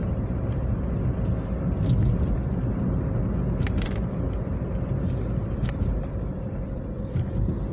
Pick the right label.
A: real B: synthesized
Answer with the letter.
A